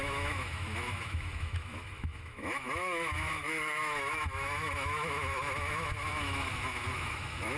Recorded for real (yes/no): no